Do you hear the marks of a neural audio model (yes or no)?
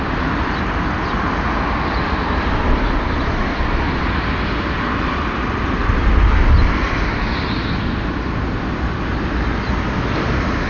no